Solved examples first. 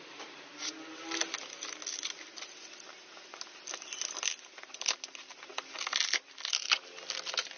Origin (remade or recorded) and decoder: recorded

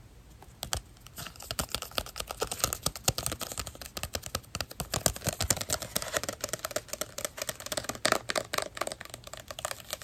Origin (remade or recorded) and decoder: recorded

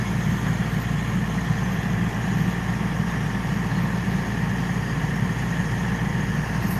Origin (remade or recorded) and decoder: recorded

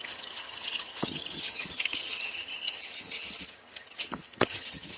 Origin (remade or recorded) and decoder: remade, vocoder, HiFi-GAN